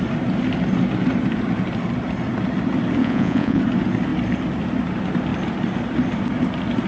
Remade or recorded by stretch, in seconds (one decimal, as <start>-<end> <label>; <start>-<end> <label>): 0.0-3.0 recorded; 3.0-3.6 remade; 3.6-6.9 recorded